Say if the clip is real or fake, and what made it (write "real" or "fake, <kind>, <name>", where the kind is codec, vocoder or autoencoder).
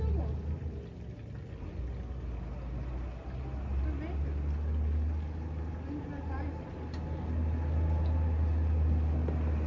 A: real